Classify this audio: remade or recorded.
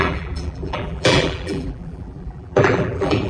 remade